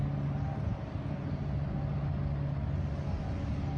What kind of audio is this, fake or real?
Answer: real